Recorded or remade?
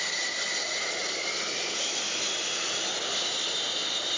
recorded